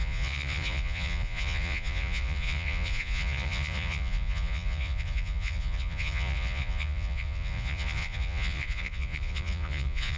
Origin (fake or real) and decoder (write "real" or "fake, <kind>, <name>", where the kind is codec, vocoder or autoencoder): fake, vocoder, Vocos